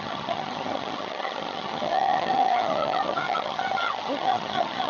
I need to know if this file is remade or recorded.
remade